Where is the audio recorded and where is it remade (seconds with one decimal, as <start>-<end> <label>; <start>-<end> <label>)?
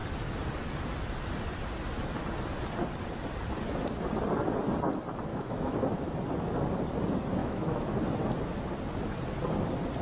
0.0-5.3 recorded; 5.3-5.8 remade; 5.8-7.4 recorded; 7.4-8.0 remade; 8.0-10.0 recorded